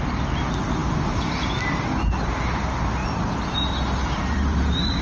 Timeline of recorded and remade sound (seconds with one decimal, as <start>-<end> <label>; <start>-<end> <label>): 0.0-5.0 recorded

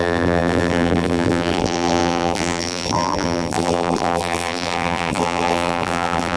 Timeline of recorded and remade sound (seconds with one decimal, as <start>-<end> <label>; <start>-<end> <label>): 0.0-6.4 remade

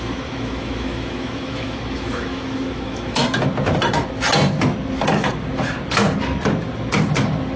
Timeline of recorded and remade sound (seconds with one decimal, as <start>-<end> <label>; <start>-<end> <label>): 0.0-3.2 remade; 3.2-7.6 recorded